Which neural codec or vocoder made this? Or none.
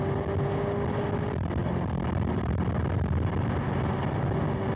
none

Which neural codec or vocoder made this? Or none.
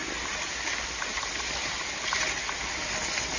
none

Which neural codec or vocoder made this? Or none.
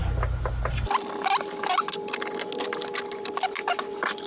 none